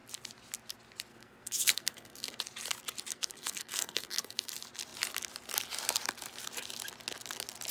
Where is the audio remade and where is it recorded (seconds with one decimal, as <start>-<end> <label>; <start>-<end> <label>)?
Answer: 0.0-1.1 recorded; 1.1-2.4 remade; 2.4-3.1 recorded; 3.1-4.5 remade; 4.5-7.7 recorded